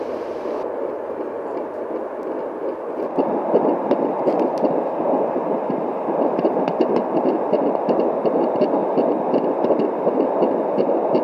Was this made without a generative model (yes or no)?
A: yes